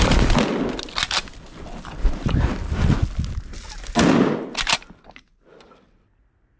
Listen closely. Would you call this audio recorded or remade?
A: recorded